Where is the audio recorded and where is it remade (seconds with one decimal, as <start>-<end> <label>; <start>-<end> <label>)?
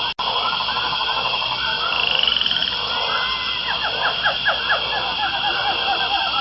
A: 0.0-6.4 recorded